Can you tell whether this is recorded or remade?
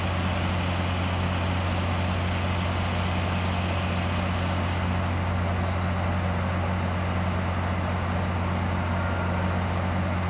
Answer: recorded